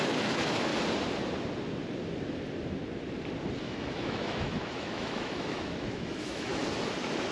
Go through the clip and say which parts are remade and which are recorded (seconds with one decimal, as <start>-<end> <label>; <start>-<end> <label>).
0.0-0.7 remade; 0.7-3.6 recorded; 3.6-6.6 remade; 6.6-7.3 recorded